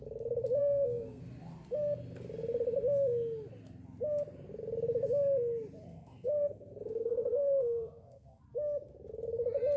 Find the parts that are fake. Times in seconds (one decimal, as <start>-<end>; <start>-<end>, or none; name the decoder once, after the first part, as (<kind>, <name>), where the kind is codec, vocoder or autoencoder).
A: 0.6-1.2 (codec, SNAC); 5.9-8.4